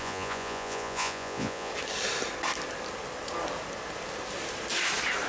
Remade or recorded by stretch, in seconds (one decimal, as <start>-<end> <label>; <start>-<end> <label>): 0.0-1.7 remade; 1.7-5.3 recorded